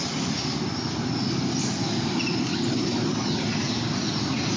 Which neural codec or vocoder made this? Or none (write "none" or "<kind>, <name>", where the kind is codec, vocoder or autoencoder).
none